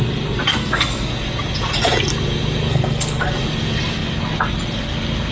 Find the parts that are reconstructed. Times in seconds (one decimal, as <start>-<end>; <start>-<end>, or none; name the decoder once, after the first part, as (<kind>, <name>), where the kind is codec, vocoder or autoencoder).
0.5-1.1 (codec, SNAC); 2.7-3.3